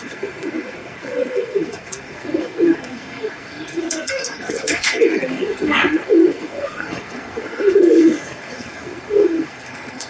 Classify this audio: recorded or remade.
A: remade